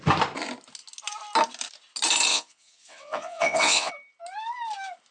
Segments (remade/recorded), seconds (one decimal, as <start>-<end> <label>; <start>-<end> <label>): 0.0-2.3 recorded; 2.3-3.9 remade; 3.9-5.1 recorded